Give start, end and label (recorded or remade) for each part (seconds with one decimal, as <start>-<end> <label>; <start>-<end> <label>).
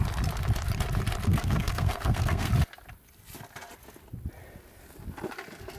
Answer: 0.0-1.3 recorded; 1.3-2.5 remade; 2.5-5.8 recorded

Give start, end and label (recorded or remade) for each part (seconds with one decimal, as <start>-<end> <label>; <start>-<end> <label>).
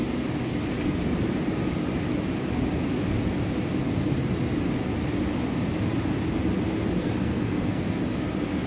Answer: 0.0-7.0 recorded; 7.0-8.0 remade; 8.0-8.7 recorded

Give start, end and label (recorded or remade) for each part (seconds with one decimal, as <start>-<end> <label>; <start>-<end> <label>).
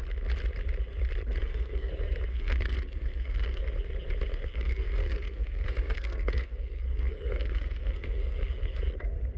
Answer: 0.0-1.4 recorded; 1.4-1.9 remade; 1.9-2.3 recorded; 2.3-3.6 remade; 3.6-4.3 recorded; 4.3-8.8 remade; 8.8-9.4 recorded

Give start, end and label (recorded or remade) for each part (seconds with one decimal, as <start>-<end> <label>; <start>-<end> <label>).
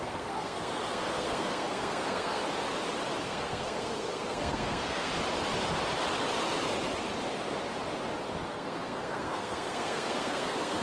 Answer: 0.0-2.4 remade; 2.4-3.2 recorded; 3.2-5.1 remade; 5.1-8.5 recorded; 8.5-10.8 remade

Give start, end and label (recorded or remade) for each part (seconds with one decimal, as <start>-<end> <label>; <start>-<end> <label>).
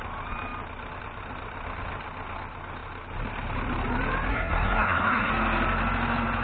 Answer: 0.0-4.3 recorded; 4.3-5.3 remade; 5.3-6.4 recorded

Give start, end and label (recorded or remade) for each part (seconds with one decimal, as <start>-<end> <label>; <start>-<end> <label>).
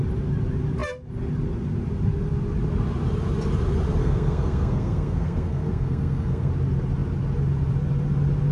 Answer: 0.0-4.0 recorded; 4.0-6.5 remade; 6.5-8.5 recorded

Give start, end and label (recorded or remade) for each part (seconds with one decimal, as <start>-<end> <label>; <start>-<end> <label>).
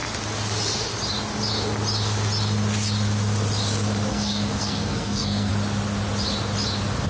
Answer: 0.0-4.1 recorded; 4.1-5.5 remade; 5.5-7.1 recorded